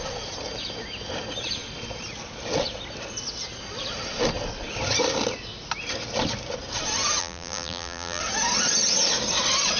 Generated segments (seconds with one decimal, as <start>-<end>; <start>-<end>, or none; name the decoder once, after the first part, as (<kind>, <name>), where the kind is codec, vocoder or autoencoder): 7.2-8.2 (vocoder, BigVGAN v2)